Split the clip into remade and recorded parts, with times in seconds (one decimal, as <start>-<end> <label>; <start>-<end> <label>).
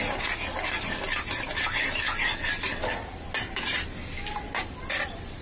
0.0-5.4 recorded